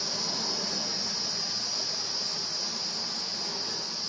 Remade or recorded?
recorded